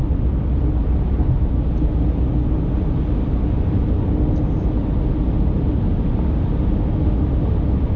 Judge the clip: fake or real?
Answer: real